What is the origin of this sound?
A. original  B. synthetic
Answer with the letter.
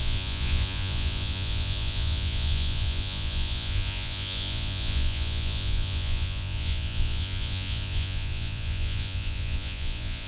B